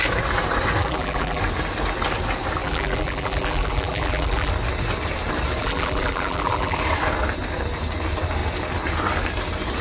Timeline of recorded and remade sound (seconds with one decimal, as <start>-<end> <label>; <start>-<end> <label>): 0.0-0.8 recorded; 0.8-1.4 remade; 1.4-2.6 recorded; 2.6-4.5 remade; 4.5-5.6 recorded; 5.6-6.8 remade; 6.8-9.8 recorded